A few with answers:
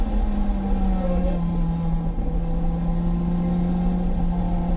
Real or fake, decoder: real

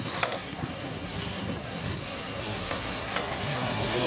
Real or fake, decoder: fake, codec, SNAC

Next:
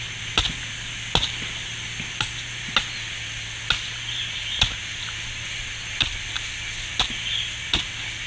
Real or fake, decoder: real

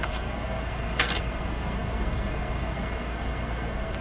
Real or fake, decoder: fake, codec, SNAC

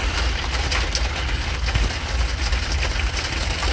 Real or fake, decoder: real